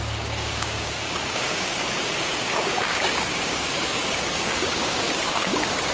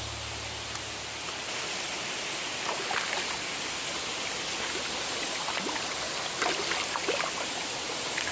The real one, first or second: second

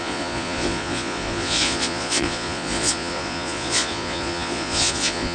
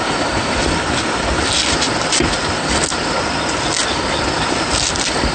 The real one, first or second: second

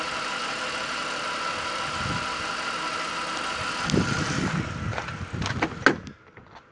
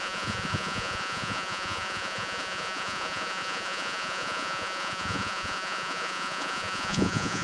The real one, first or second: first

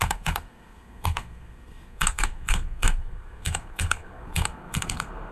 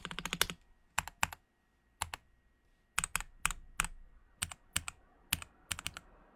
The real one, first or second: second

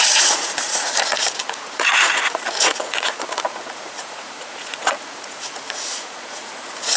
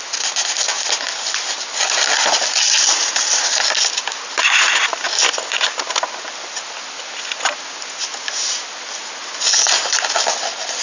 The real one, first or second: second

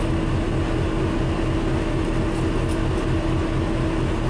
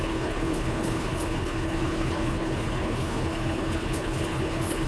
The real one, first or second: first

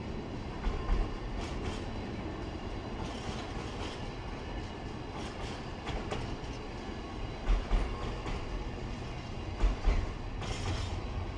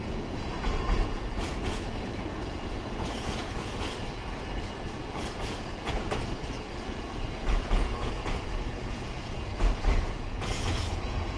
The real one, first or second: first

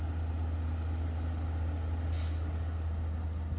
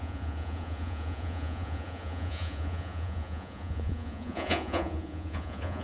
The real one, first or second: first